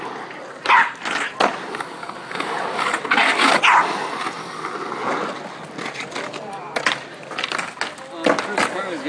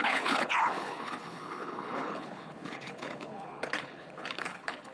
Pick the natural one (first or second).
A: first